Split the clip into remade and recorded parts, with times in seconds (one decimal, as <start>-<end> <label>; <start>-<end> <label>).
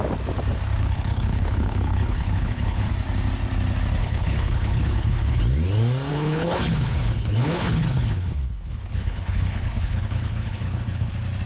0.0-0.8 recorded; 0.8-2.9 remade; 2.9-4.0 recorded; 4.0-5.4 remade; 5.4-6.1 recorded; 6.1-11.1 remade; 11.1-11.5 recorded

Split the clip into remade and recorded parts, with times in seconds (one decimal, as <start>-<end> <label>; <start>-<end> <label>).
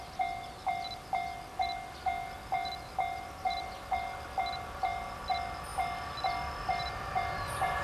0.0-7.8 recorded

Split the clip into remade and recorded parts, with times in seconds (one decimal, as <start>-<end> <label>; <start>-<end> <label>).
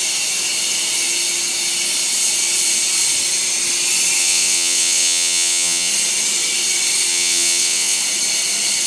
0.0-4.2 recorded; 4.2-5.9 remade; 5.9-7.1 recorded; 7.1-8.0 remade; 8.0-8.9 recorded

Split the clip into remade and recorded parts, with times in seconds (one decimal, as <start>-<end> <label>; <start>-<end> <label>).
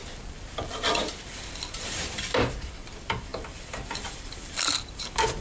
0.0-5.4 remade